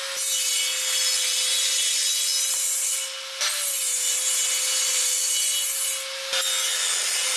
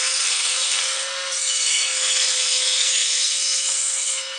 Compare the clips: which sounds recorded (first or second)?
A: first